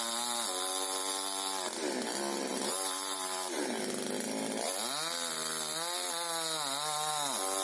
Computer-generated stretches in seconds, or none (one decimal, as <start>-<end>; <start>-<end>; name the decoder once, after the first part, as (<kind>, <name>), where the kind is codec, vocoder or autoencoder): 2.5-3.8 (vocoder, BigVGAN v2)